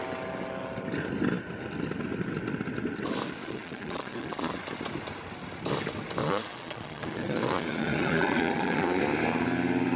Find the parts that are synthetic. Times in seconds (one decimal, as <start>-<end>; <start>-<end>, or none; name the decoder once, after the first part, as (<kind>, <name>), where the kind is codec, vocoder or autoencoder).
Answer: 3.4-4.6 (vocoder, Vocos); 6.2-9.0